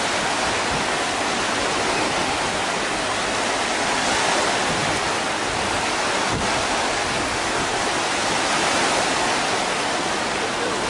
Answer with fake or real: real